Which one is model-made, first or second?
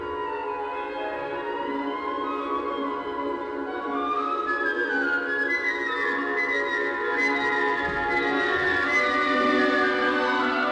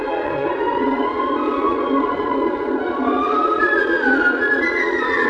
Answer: second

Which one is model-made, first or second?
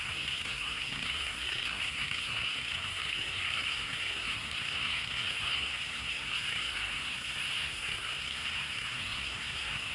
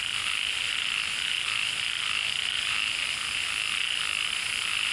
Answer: first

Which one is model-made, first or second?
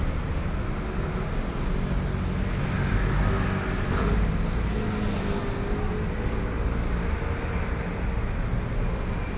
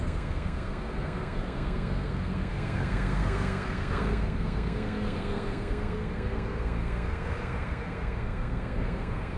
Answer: second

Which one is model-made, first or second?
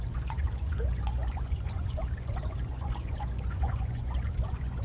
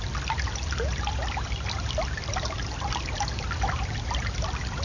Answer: first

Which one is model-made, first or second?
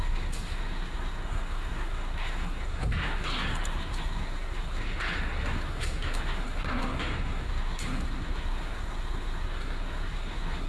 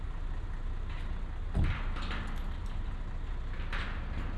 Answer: first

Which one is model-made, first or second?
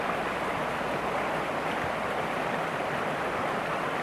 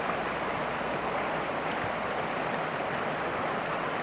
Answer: first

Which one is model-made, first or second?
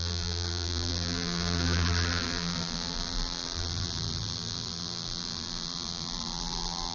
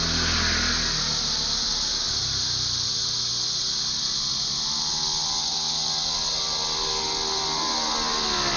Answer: first